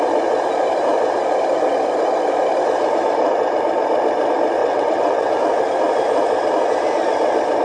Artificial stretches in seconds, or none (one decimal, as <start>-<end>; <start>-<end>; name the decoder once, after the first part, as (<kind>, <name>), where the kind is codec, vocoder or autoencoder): 4.6-5.3 (vocoder, WaveNeXt)